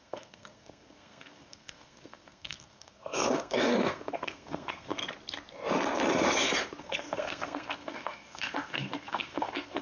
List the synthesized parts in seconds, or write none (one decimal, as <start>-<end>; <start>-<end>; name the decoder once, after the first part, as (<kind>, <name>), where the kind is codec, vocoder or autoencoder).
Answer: 0.0-5.0 (codec, SNAC); 6.8-9.8